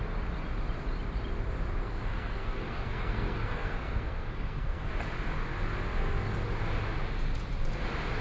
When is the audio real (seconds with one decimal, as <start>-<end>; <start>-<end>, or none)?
0.0-1.8; 4.9-8.2